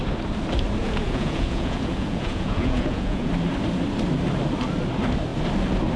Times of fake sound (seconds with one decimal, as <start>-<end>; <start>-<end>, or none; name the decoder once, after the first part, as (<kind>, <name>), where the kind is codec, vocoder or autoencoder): 0.8-3.3 (vocoder, Vocos)